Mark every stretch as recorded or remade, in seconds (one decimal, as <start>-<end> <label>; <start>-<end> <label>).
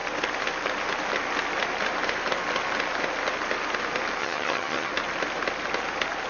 0.0-4.2 recorded; 4.2-4.9 remade; 4.9-6.3 recorded